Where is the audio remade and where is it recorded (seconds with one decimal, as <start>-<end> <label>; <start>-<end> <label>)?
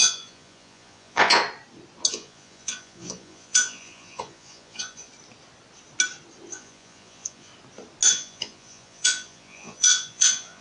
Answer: 0.0-1.4 remade; 1.4-2.1 recorded; 2.1-5.1 remade; 5.1-6.5 recorded; 6.5-7.5 remade; 7.5-8.1 recorded; 8.1-10.6 remade